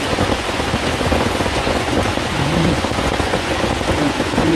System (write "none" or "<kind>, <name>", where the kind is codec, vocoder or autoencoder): vocoder, Vocos